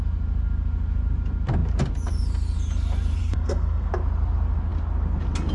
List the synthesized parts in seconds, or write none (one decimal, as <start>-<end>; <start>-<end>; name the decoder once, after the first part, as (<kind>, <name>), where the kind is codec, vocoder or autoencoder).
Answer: 3.2-3.9 (codec, SNAC)